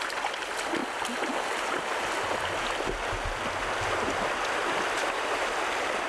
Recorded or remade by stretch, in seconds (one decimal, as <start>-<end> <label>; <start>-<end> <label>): 0.0-6.1 recorded